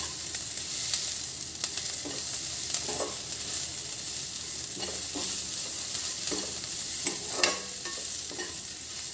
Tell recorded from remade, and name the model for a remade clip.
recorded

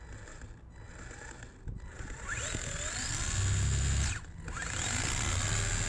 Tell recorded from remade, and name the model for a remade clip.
recorded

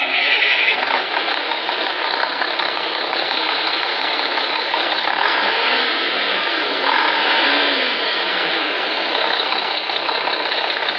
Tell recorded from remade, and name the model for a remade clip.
remade, codec, SNAC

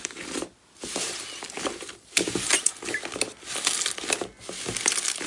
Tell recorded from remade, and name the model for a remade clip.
recorded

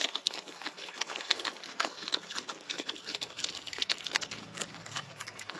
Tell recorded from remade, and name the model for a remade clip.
remade, codec, SNAC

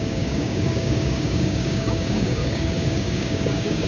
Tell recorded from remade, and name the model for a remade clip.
remade, codec, DAC